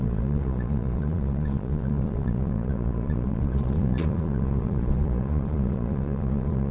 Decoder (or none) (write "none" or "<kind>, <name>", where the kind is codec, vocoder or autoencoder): vocoder, Vocos